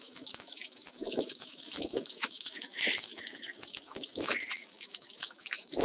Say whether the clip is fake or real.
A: fake